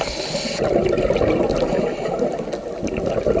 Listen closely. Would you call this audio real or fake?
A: real